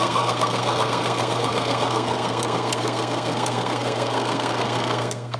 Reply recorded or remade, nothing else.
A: remade